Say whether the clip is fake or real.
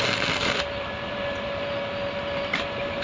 real